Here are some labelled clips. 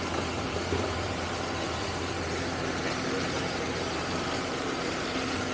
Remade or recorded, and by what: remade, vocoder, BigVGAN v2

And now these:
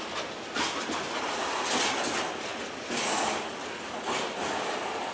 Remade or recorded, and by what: recorded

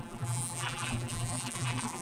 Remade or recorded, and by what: remade, vocoder, BigVGAN v2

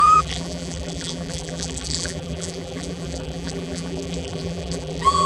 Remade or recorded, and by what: remade, vocoder, BigVGAN v2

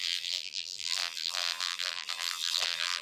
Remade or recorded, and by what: remade, vocoder, BigVGAN v2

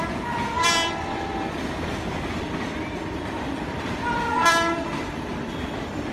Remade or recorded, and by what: remade, vocoder, BigVGAN v2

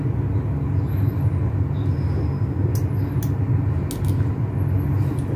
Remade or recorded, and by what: recorded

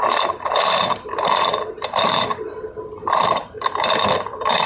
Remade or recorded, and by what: remade, vocoder, BigVGAN v2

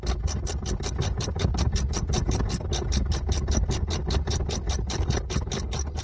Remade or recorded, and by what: recorded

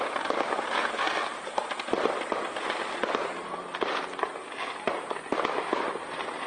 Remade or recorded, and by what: remade, vocoder, BigVGAN v2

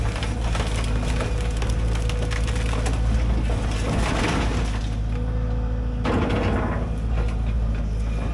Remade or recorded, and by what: recorded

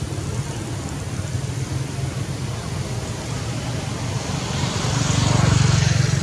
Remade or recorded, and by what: recorded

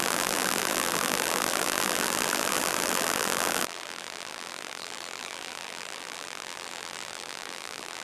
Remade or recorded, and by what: remade, vocoder, BigVGAN v2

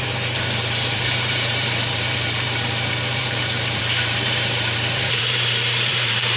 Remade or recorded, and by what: remade, vocoder, BigVGAN v2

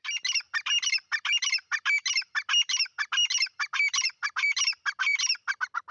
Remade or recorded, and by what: remade, vocoder, BigVGAN v2